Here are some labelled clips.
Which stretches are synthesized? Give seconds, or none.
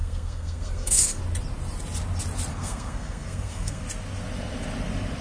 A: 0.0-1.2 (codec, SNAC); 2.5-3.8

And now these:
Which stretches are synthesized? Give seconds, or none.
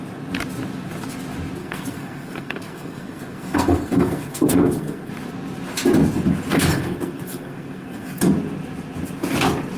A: 1.6-5.1 (codec, SNAC); 6.5-8.2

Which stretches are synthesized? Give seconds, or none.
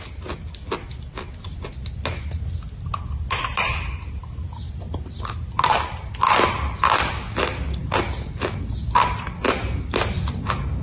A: none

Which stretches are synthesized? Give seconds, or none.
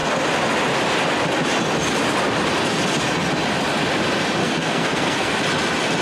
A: 4.4-5.4 (codec, SNAC)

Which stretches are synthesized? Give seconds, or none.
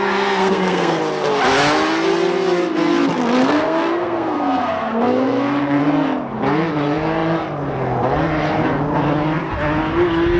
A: 0.4-1.0 (codec, SNAC); 3.4-5.8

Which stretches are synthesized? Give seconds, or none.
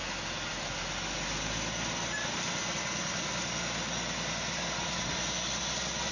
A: none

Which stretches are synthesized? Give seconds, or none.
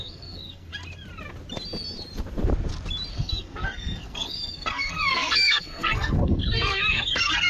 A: 0.0-0.7 (codec, SNAC); 3.1-7.5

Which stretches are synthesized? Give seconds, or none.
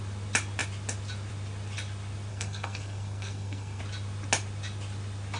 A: 2.3-3.8 (codec, SNAC)